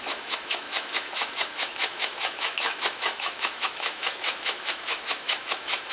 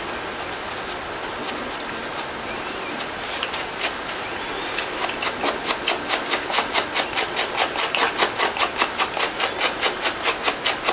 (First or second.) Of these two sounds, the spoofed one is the first